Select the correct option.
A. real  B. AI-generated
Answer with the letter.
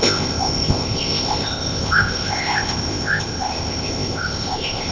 B